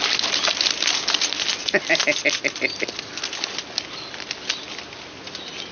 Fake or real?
real